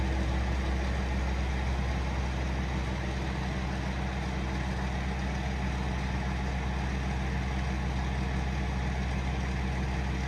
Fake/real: real